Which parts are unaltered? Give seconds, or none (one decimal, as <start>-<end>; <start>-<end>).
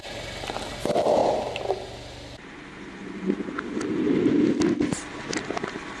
0.0-6.0